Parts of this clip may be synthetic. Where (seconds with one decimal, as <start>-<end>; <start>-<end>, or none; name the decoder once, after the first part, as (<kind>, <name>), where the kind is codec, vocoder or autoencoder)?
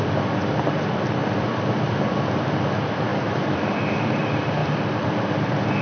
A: 1.2-1.9 (vocoder, BigVGAN v2); 3.1-3.9; 4.6-5.1